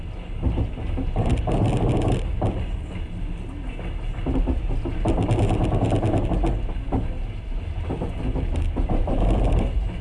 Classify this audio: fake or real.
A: real